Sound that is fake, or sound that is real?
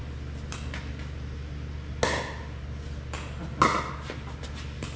real